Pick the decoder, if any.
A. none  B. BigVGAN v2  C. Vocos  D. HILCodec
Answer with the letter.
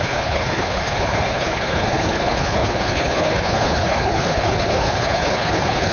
D